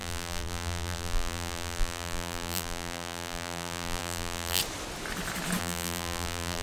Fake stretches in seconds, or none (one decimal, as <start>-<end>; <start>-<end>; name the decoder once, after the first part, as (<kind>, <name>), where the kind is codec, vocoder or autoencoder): 0.0-4.6 (vocoder, BigVGAN v2); 5.6-6.6